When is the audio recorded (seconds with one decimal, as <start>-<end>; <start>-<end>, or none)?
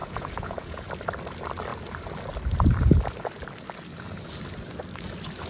0.9-5.5